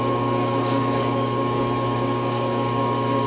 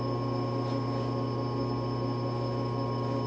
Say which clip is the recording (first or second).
second